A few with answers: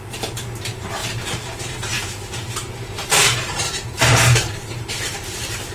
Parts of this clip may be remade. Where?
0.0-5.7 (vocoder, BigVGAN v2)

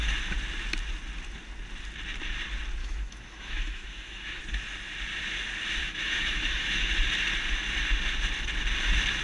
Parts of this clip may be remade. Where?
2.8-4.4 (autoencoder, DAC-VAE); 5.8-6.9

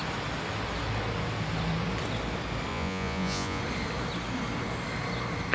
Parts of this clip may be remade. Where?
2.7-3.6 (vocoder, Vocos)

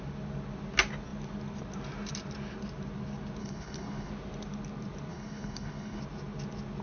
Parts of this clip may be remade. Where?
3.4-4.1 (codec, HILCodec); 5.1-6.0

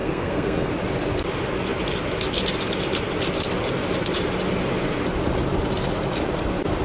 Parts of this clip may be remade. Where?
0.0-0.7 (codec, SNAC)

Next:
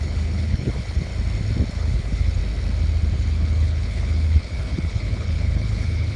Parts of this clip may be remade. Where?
0.0-1.1 (codec, HILCodec); 1.7-2.4; 3.1-6.2

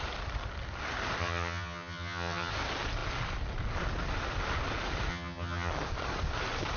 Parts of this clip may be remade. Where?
1.2-2.5 (vocoder, HiFi-GAN); 5.1-5.7

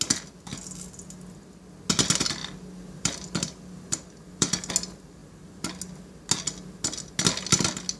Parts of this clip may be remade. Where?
2.4-4.7 (vocoder, BigVGAN v2); 5.2-5.8